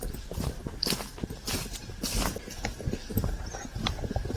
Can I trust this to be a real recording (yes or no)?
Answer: yes